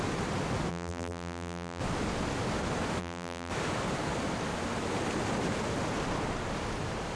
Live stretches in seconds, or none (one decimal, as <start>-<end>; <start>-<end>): 0.0-0.7; 1.8-3.0; 3.5-7.2